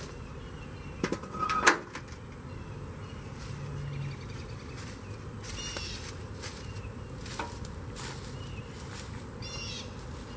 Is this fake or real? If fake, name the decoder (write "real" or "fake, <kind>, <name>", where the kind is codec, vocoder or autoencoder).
real